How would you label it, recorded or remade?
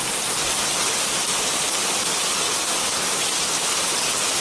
recorded